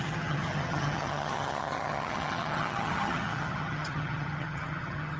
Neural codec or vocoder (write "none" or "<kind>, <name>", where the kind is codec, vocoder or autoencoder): vocoder, HiFi-GAN